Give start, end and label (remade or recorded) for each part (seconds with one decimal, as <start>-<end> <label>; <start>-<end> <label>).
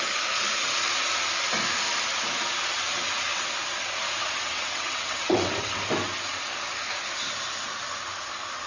0.0-4.2 recorded; 4.2-5.8 remade; 5.8-8.7 recorded